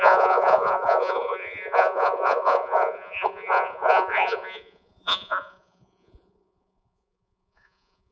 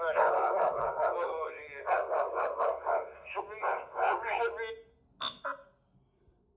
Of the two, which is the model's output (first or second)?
first